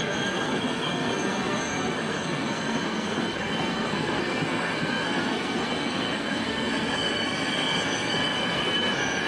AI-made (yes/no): yes